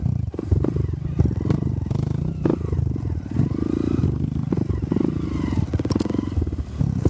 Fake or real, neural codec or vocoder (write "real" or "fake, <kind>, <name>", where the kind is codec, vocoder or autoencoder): real